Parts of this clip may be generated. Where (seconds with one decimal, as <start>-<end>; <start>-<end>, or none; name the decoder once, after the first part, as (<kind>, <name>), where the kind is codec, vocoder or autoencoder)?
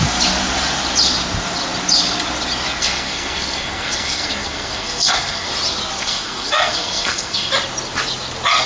2.8-5.5 (codec, SNAC); 6.0-7.5